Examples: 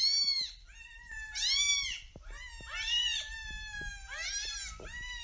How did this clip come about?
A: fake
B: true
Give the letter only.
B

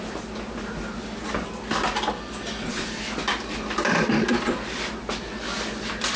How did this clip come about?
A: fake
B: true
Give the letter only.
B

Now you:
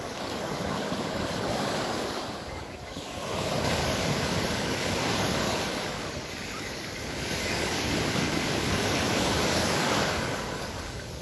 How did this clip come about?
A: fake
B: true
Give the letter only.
A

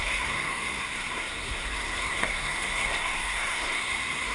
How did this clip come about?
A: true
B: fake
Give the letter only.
B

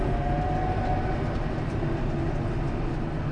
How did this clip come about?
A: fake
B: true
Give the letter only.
B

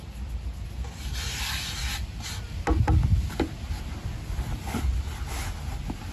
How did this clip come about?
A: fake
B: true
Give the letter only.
B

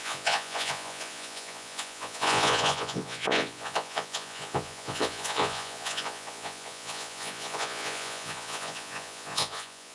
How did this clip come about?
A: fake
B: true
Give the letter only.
A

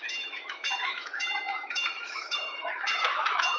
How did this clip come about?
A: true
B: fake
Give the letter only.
B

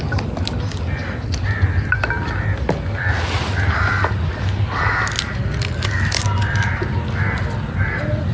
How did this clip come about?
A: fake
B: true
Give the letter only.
B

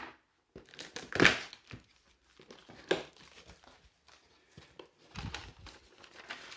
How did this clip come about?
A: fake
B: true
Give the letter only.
B